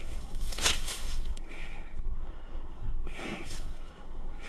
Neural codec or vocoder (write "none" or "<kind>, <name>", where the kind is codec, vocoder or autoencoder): codec, SNAC